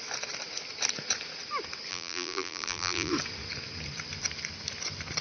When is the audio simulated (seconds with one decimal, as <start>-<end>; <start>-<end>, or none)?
1.9-3.1